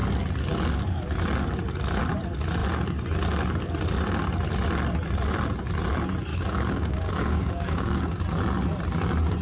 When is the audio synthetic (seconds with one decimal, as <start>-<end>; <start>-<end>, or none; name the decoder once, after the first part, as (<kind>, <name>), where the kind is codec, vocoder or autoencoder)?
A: 6.3-8.2 (codec, DAC)